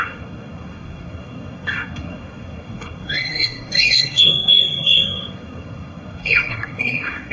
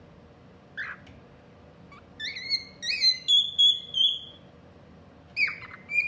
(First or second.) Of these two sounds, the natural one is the second